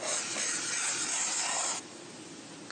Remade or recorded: recorded